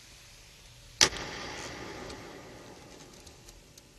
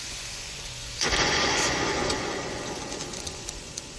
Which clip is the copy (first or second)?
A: second